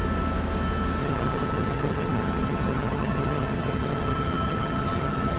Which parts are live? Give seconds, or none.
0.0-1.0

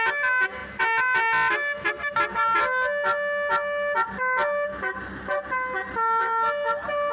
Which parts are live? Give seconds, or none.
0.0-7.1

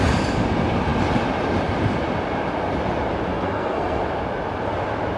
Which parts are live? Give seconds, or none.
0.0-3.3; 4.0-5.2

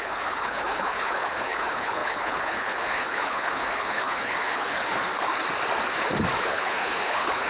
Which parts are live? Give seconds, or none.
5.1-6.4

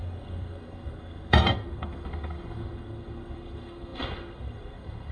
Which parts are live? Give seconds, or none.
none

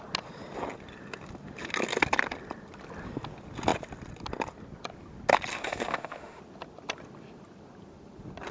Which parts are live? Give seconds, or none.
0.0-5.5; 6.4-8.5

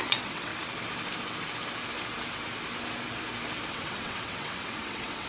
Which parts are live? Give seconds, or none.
0.5-3.7